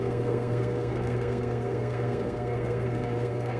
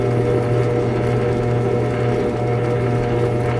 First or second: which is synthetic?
first